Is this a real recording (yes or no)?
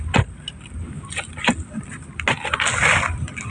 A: yes